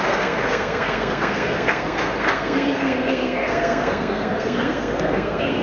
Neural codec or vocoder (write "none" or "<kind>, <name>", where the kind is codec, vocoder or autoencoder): codec, SNAC